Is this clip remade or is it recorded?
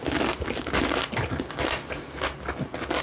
recorded